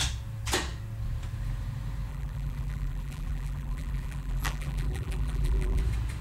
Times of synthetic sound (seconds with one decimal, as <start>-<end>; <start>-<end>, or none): 2.1-5.8